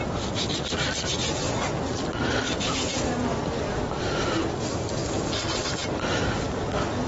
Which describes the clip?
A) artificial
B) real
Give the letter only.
B